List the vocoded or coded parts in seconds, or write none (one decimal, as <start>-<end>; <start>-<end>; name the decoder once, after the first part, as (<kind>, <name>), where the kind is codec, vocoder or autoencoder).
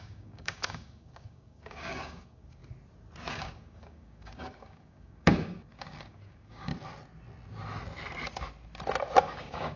0.0-2.6 (codec, DAC); 3.3-6.7; 9.2-9.8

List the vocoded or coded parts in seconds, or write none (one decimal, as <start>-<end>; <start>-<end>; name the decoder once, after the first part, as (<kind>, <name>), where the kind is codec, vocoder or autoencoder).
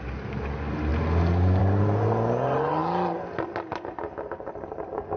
none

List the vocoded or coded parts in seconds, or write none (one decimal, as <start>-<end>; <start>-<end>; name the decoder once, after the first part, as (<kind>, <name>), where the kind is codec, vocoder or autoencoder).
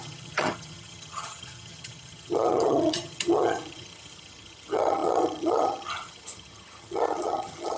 0.0-7.8 (vocoder, HiFi-GAN)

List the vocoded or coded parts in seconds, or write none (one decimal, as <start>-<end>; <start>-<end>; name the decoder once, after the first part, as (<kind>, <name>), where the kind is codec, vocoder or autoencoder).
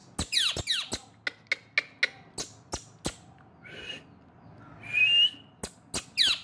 none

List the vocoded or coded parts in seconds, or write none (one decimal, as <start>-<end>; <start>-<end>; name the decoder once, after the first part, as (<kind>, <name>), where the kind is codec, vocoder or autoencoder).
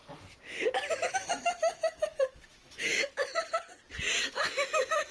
1.1-3.1 (autoencoder, DAC-VAE); 4.2-5.1